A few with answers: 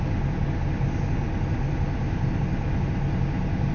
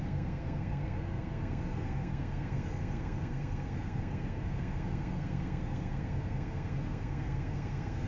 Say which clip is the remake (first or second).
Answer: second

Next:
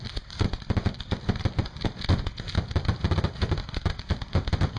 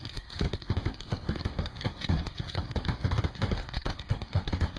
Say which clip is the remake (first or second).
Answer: second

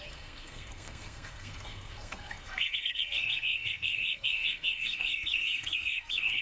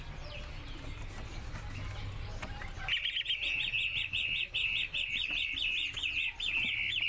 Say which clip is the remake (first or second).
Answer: first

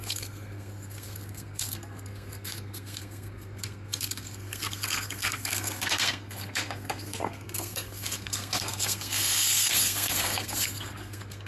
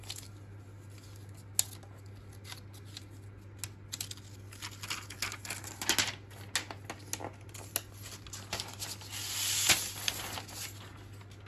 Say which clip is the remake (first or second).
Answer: first